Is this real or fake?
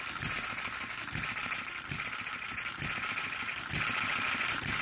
real